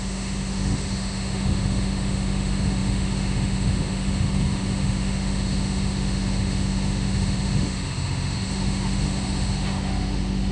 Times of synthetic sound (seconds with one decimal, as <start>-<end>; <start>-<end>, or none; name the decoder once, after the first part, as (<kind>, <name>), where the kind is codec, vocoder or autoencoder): 0.0-10.5 (autoencoder, DAC-VAE)